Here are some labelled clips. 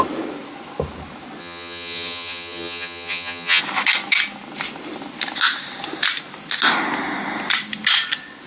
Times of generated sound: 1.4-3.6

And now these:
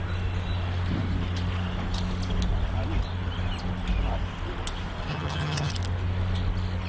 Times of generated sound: 5.1-5.7

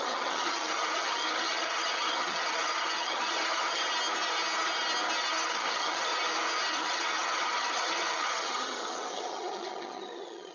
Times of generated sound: 0.0-3.8; 5.3-6.1; 6.7-10.5

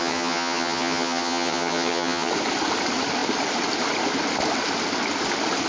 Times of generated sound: 0.0-2.3

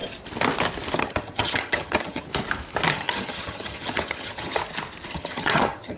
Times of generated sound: 1.0-2.3; 2.9-4.6; 5.1-6.0

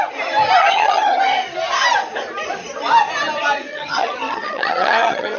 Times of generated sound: 0.6-1.2; 3.7-5.4

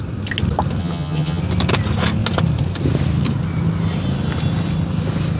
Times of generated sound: 0.8-1.4